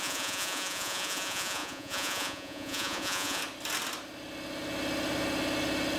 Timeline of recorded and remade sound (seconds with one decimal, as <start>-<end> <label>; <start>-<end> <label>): 0.0-3.4 remade; 3.4-6.0 recorded